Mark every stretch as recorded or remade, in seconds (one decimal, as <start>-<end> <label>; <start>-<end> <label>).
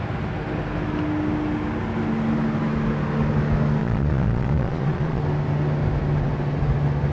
0.0-3.8 recorded; 3.8-5.2 remade; 5.2-7.1 recorded